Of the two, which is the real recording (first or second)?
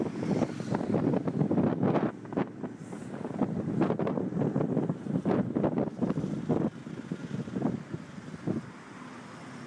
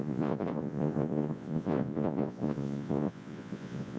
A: first